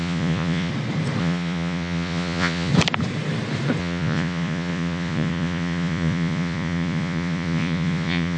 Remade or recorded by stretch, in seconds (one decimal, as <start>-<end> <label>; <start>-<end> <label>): 0.0-0.7 remade; 0.7-1.2 recorded; 1.2-2.7 remade; 2.7-3.8 recorded; 3.8-8.4 remade